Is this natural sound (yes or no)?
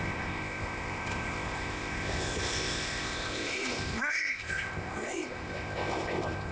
no